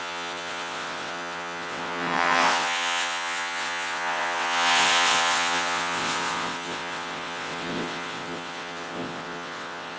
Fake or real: fake